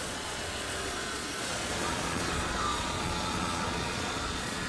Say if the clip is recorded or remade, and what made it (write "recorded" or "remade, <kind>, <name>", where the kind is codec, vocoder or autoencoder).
remade, vocoder, Vocos